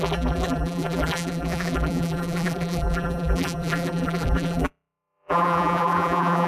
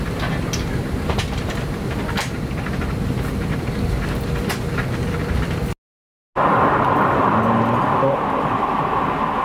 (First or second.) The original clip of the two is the second